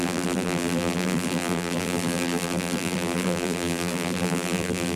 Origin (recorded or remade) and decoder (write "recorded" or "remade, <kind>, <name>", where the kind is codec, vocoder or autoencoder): remade, vocoder, BigVGAN v2